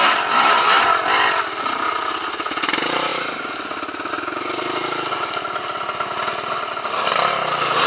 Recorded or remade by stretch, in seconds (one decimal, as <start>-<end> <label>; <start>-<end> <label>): 0.0-7.9 recorded